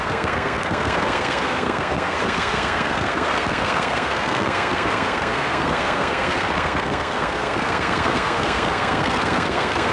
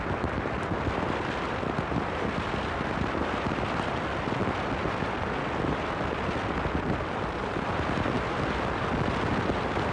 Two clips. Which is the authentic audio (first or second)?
second